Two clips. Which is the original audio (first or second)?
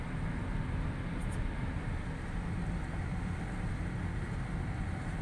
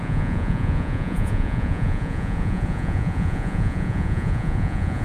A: first